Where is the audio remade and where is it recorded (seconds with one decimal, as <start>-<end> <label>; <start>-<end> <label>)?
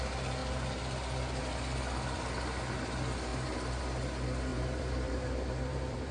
0.0-3.3 recorded; 3.3-3.8 remade; 3.8-4.5 recorded; 4.5-6.1 remade